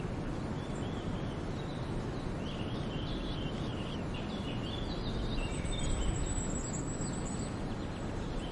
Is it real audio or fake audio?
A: real